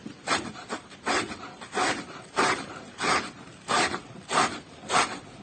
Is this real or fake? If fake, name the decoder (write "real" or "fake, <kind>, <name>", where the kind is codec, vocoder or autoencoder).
real